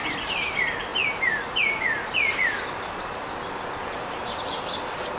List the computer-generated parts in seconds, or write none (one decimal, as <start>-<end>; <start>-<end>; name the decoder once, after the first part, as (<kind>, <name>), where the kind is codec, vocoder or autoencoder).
none